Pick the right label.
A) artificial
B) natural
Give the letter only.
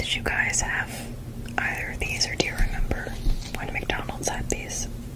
B